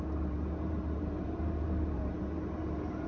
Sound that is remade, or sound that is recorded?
remade